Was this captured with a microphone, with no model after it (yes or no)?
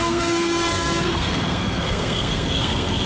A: no